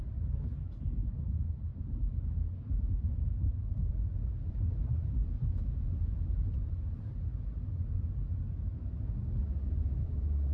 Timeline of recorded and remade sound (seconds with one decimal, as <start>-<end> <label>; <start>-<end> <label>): 0.0-7.3 remade; 7.3-9.3 recorded; 9.3-10.5 remade

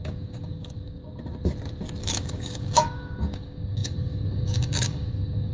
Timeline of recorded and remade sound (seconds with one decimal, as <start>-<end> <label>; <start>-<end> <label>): 0.0-1.0 remade; 1.0-2.0 recorded; 2.0-5.5 remade